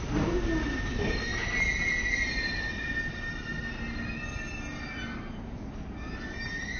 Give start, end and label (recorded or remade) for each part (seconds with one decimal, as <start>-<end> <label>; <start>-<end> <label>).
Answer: 0.0-6.8 recorded